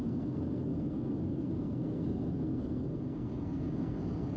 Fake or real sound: fake